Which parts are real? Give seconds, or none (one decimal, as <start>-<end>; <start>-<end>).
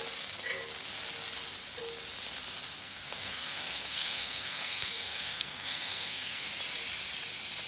0.0-2.8; 6.5-7.7